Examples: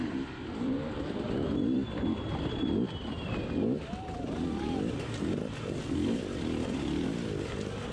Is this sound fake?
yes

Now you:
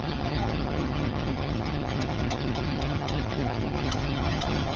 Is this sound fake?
yes